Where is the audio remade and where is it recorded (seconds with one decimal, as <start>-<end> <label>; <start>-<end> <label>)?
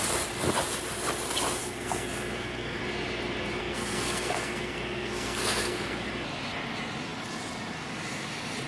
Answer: 0.0-1.6 recorded; 1.6-2.8 remade; 2.8-3.6 recorded; 3.6-6.1 remade; 6.1-8.7 recorded